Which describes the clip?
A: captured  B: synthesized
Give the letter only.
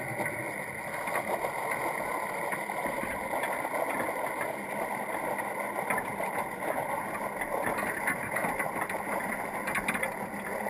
A